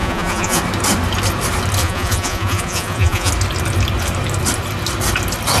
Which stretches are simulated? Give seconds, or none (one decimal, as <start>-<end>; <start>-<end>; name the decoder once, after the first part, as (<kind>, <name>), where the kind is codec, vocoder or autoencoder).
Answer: 0.0-0.6 (vocoder, Vocos); 1.8-3.3

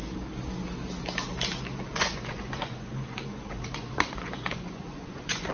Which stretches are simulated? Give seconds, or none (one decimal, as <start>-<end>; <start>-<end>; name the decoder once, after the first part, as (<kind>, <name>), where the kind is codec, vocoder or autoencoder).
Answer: 1.9-5.5 (vocoder, Vocos)

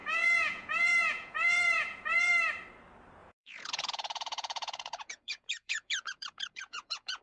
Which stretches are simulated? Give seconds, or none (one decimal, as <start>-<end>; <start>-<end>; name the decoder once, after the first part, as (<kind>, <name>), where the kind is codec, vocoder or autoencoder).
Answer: 0.0-2.3 (vocoder, Vocos); 3.2-7.2